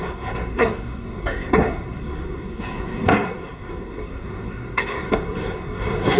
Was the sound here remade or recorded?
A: remade